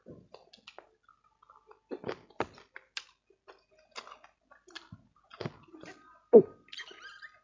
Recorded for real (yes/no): yes